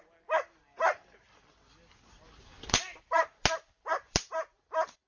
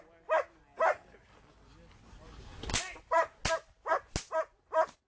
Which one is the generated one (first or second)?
first